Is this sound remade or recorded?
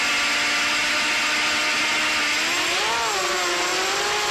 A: recorded